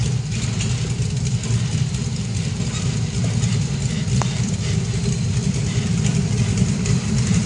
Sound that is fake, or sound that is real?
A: fake